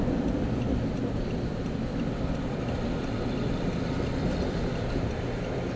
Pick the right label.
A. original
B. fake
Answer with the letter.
A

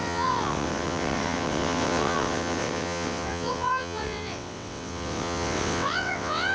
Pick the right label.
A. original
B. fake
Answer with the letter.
B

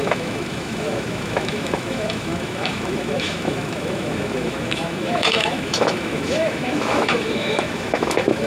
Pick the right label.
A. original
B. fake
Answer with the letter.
B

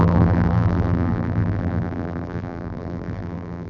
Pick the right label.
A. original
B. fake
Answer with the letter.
B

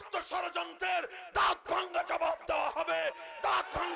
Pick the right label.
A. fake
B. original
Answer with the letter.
B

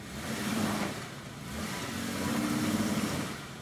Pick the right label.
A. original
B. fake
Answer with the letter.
B